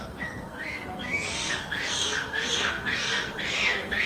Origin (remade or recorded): remade